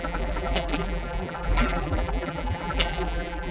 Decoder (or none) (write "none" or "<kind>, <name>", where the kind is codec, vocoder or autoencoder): vocoder, BigVGAN v2